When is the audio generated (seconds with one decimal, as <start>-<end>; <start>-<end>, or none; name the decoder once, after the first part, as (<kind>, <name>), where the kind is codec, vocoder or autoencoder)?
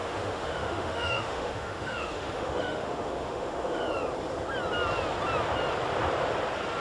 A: 0.0-3.8 (autoencoder, DAC-VAE)